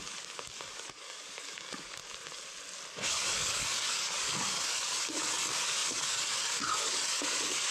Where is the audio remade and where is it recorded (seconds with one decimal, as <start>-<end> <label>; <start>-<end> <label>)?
0.0-2.0 remade; 2.0-2.9 recorded; 2.9-7.7 remade